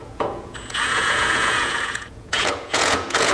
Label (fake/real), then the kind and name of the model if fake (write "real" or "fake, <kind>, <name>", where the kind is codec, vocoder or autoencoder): fake, vocoder, Vocos